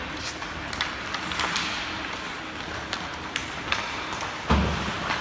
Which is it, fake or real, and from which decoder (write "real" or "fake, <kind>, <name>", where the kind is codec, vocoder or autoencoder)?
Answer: real